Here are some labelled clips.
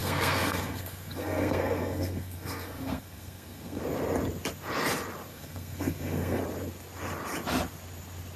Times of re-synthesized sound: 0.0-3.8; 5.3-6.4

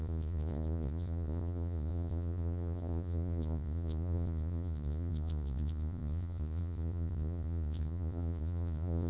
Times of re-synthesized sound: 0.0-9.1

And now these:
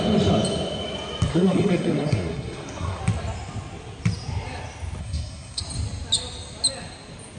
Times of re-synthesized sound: 1.3-3.0; 5.0-5.6

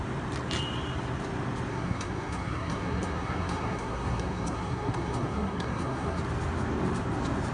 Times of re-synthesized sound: 1.7-6.2

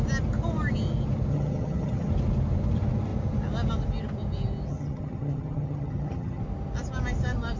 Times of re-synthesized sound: 1.3-2.1; 4.7-6.4

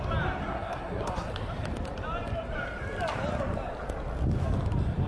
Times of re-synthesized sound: 0.4-1.3